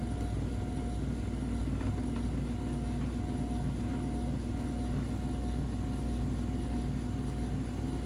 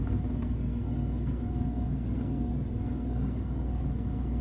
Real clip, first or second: first